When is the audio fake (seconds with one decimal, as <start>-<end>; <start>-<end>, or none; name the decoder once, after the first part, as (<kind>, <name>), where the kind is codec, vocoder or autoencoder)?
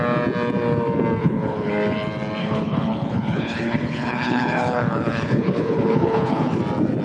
1.2-1.7 (codec, HILCodec); 2.4-6.6